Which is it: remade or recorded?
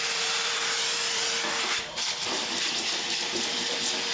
remade